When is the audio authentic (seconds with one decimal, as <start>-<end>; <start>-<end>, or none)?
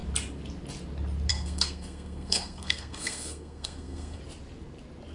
0.0-1.3; 4.2-5.1